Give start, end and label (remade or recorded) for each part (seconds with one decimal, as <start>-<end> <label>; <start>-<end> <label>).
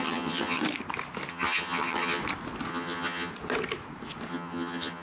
0.0-0.6 remade; 0.6-1.3 recorded; 1.3-2.2 remade; 2.2-2.7 recorded; 2.7-3.3 remade; 3.3-4.3 recorded; 4.3-5.0 remade